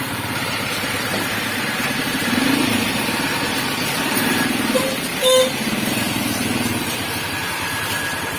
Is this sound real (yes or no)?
no